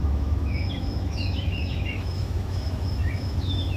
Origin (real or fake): fake